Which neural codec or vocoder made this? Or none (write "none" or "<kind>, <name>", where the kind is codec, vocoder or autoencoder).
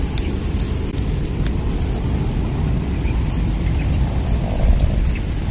none